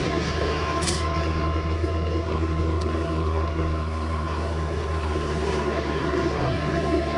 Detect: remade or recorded remade